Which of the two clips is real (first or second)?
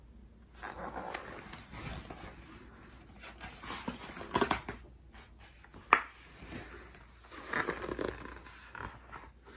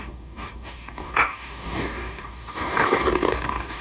first